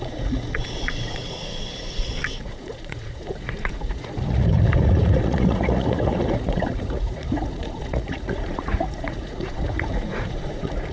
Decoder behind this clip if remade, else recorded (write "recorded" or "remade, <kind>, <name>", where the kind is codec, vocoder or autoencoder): remade, vocoder, Vocos